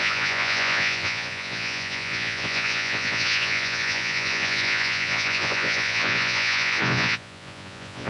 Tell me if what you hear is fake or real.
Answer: fake